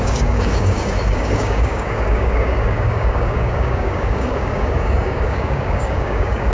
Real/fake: fake